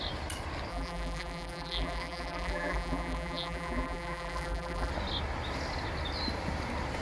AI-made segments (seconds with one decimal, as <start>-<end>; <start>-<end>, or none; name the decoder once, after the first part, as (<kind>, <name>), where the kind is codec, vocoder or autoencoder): 0.7-4.9 (vocoder, BigVGAN v2)

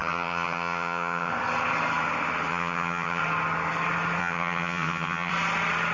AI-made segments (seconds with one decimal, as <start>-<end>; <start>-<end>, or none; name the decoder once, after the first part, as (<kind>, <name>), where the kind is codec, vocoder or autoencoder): 0.0-1.3 (vocoder, HiFi-GAN); 2.5-3.2; 4.2-5.3

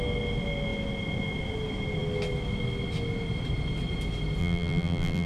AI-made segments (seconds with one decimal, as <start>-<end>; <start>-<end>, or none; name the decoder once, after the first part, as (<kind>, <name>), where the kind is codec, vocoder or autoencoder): 4.4-5.3 (vocoder, BigVGAN v2)

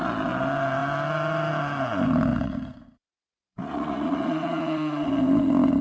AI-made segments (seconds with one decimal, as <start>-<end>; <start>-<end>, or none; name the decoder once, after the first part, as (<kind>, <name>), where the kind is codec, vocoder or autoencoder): 2.3-5.1 (vocoder, Vocos)

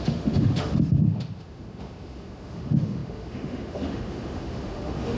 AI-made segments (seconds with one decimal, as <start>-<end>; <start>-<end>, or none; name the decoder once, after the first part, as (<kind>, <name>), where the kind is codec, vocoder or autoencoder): 0.0-5.2 (autoencoder, DAC-VAE)

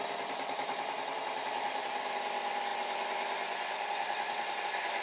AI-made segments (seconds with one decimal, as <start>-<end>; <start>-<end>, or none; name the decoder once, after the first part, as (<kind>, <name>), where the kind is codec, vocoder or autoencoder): 0.0-5.0 (vocoder, BigVGAN v2)

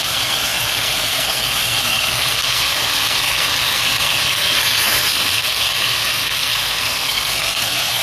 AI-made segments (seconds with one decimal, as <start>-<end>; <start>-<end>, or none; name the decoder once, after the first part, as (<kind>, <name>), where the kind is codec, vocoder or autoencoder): 0.0-8.0 (codec, SNAC)

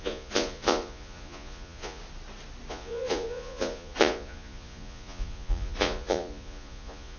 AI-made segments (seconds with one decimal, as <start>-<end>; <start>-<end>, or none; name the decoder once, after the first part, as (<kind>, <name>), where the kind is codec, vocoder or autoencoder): 0.0-2.0 (vocoder, Vocos); 2.7-7.2